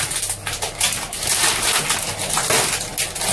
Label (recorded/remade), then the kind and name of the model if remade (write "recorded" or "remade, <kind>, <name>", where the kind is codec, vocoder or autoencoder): recorded